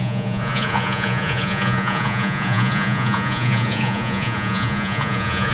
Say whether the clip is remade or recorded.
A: remade